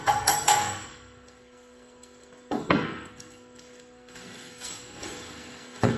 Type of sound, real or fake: fake